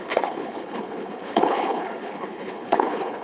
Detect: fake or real fake